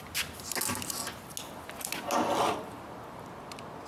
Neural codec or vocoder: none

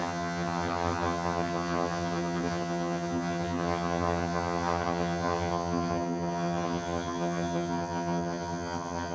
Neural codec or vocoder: vocoder, HiFi-GAN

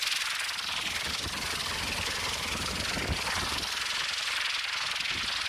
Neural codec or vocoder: none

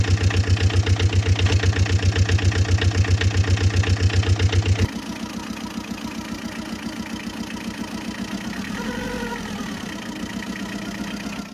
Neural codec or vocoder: none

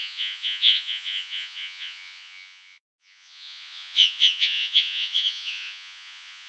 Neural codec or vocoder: vocoder, Vocos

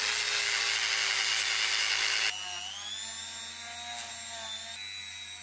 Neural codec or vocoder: none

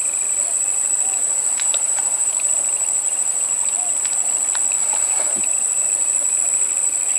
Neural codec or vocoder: none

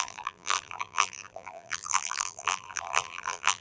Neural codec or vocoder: vocoder, BigVGAN v2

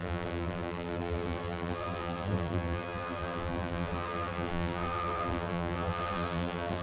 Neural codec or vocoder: vocoder, BigVGAN v2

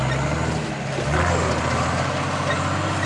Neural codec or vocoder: none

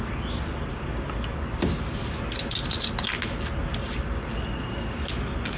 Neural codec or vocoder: none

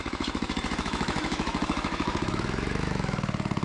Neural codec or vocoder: autoencoder, DAC-VAE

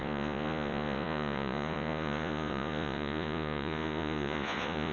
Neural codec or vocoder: vocoder, Vocos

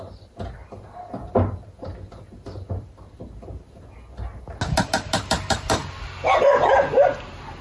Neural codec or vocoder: none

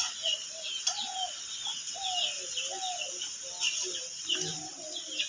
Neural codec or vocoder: none